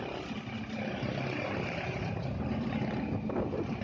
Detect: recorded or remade recorded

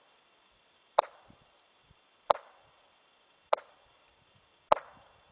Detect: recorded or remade recorded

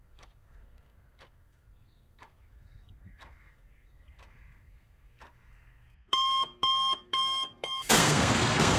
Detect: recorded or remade remade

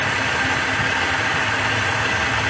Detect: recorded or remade recorded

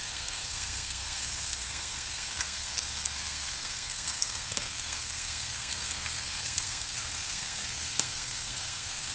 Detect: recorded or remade remade